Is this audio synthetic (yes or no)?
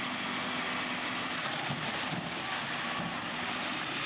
no